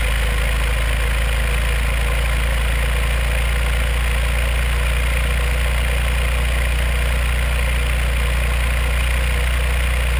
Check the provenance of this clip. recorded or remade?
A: recorded